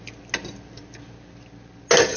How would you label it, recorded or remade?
recorded